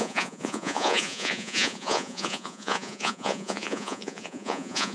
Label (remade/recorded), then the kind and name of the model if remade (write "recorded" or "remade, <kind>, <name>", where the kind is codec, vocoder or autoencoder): remade, vocoder, Vocos